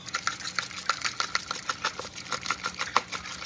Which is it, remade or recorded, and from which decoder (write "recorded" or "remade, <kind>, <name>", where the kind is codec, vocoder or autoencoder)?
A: recorded